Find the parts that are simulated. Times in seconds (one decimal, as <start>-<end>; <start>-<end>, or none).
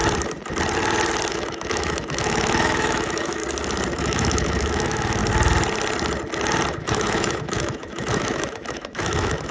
1.3-3.4; 3.9-5.2; 6.7-9.5